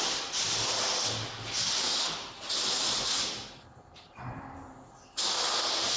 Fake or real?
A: real